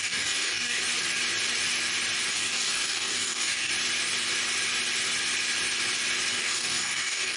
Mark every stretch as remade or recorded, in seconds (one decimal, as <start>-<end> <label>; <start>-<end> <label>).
0.0-0.8 remade; 0.8-2.3 recorded; 2.3-3.7 remade; 3.7-6.3 recorded; 6.3-7.4 remade